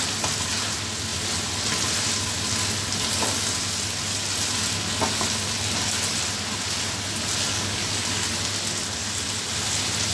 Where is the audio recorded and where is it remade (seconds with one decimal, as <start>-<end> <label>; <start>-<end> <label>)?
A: 0.0-7.5 recorded; 7.5-8.3 remade; 8.3-10.1 recorded